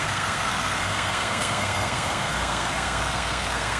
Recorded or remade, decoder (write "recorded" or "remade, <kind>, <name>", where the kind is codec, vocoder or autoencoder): remade, codec, SNAC